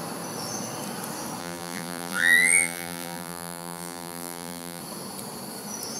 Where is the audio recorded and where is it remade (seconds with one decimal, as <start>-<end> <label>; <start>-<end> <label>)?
0.0-1.4 recorded; 1.4-4.8 remade; 4.8-6.0 recorded